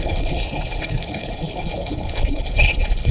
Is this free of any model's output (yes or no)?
no